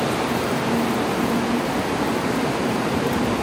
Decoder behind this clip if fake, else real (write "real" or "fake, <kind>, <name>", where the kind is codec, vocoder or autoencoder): fake, vocoder, BigVGAN v2